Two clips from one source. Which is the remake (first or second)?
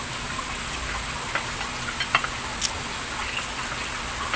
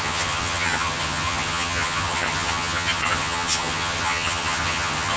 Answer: second